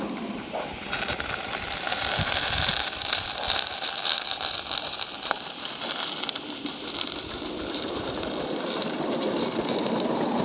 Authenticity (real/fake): fake